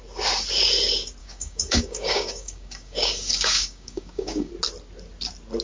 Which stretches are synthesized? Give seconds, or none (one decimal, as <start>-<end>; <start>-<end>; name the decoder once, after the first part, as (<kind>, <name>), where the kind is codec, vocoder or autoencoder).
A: 1.2-4.5 (codec, DAC)